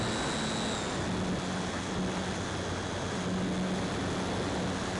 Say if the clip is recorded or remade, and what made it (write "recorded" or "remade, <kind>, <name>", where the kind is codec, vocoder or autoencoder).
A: recorded